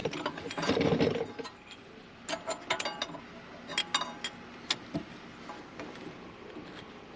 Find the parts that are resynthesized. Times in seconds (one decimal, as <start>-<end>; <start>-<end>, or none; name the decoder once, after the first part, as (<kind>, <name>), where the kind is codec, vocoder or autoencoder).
none